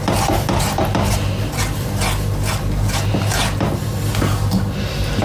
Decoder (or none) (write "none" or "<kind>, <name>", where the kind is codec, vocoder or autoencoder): none